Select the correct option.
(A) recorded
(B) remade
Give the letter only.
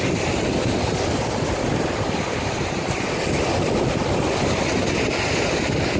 A